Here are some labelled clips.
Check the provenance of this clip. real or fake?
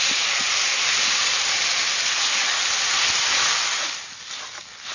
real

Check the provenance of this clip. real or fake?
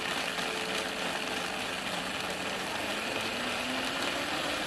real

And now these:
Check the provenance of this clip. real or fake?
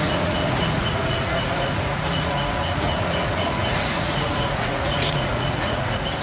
fake